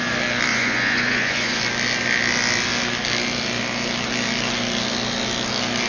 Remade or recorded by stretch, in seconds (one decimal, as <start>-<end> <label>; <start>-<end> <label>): 0.0-0.5 recorded; 0.5-1.6 remade; 1.6-5.9 recorded